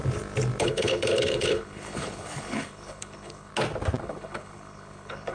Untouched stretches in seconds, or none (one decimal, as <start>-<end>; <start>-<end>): 0.0-0.6; 3.5-4.0